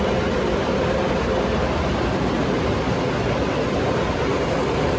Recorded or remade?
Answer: recorded